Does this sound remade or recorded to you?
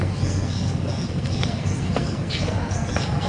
remade